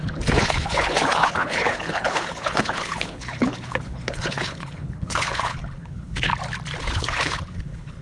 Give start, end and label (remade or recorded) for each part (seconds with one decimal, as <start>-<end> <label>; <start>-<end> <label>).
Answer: 0.0-6.3 remade; 6.3-6.8 recorded; 6.8-8.0 remade